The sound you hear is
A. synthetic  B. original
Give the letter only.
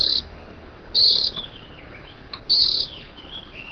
A